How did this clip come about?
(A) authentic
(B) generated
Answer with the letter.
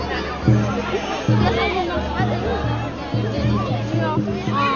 A